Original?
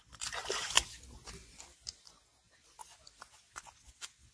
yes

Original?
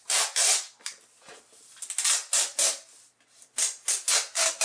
yes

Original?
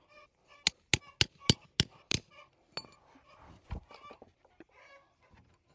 yes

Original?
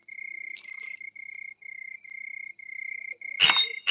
yes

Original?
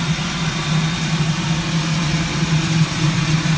yes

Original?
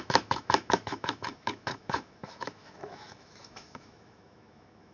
no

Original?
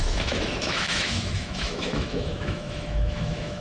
no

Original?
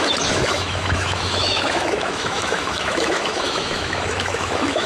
no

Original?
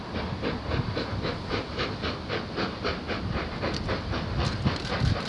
yes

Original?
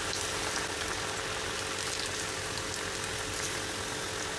yes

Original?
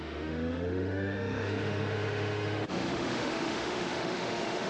no